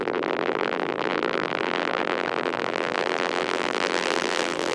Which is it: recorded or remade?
remade